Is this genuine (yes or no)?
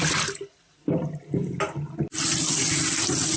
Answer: yes